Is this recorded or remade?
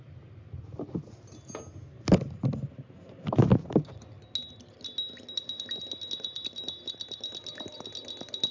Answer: recorded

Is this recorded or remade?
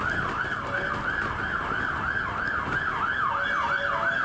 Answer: recorded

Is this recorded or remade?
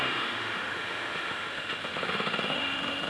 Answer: remade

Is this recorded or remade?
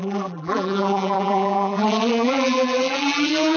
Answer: remade